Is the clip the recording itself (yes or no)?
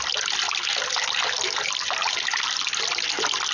yes